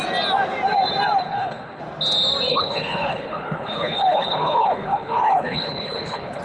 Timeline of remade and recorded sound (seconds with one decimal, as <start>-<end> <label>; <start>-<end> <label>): 0.0-1.2 recorded; 1.2-1.8 remade; 1.8-2.5 recorded; 2.5-6.4 remade